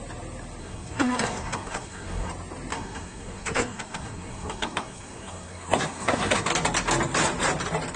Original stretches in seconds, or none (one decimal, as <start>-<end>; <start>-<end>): 0.0-0.6; 2.3-2.7; 6.5-8.0